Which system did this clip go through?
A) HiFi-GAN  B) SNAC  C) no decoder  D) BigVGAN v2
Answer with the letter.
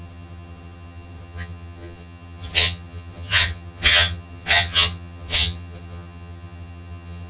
A